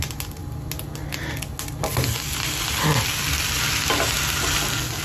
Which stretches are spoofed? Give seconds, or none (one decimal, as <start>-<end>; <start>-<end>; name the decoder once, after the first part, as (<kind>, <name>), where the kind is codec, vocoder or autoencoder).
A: none